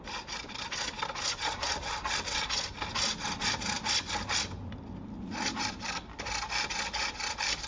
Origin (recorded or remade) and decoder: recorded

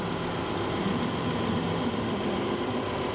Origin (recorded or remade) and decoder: recorded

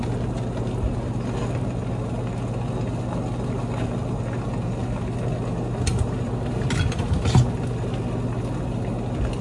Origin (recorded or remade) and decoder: recorded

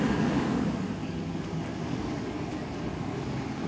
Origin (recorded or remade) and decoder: remade, codec, DAC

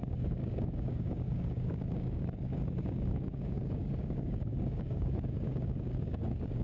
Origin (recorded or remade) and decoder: remade, codec, DAC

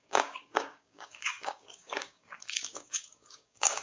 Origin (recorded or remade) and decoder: remade, codec, DAC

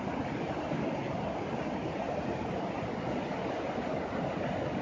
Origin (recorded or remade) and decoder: recorded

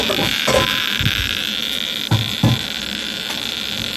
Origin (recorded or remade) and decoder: recorded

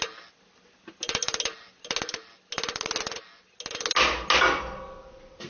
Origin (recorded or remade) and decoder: recorded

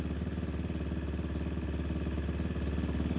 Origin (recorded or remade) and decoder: recorded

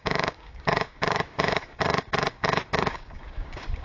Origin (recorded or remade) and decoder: remade, codec, DAC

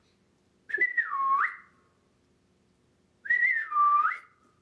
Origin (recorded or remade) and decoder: recorded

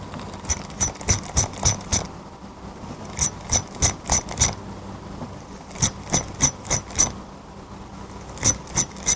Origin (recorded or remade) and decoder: recorded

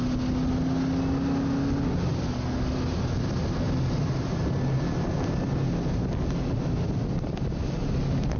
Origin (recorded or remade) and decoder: recorded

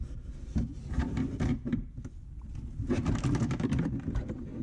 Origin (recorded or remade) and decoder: recorded